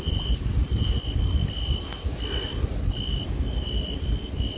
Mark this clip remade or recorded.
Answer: recorded